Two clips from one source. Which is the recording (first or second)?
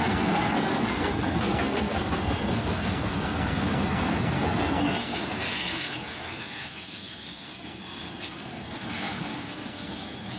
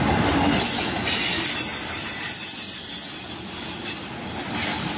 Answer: second